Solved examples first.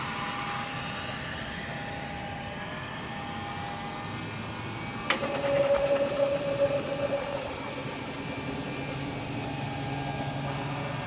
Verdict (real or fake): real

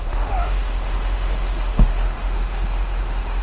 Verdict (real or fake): fake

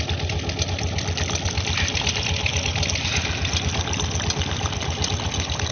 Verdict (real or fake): real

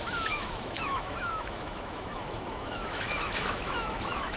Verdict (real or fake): fake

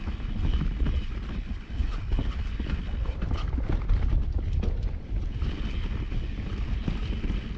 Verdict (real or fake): real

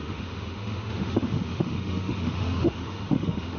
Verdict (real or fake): fake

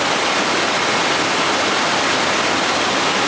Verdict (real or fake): real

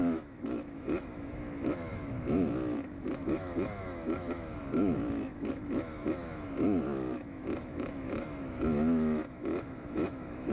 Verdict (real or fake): fake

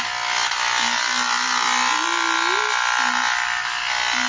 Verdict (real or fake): real